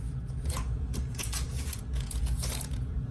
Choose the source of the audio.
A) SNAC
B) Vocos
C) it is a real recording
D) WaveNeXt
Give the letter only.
B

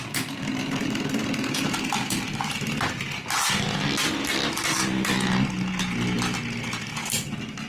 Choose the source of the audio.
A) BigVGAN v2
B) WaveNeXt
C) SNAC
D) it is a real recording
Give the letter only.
D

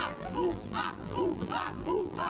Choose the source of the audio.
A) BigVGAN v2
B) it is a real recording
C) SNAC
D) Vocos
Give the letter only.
A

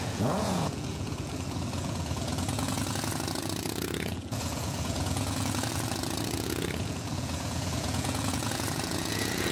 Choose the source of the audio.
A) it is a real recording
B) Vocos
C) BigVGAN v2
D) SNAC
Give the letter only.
B